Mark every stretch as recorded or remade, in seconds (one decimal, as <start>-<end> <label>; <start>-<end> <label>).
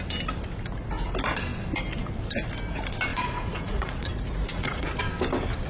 0.0-3.1 recorded; 3.1-5.0 remade; 5.0-5.7 recorded